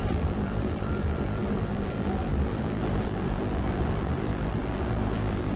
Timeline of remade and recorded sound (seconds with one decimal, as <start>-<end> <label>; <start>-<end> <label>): 0.0-5.6 remade